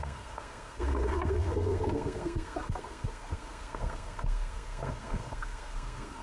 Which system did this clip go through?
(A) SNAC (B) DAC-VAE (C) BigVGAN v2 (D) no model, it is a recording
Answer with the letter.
A